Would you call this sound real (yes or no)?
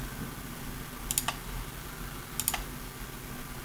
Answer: yes